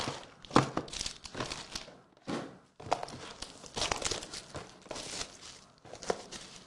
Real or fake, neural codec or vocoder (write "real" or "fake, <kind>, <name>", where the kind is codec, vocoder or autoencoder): real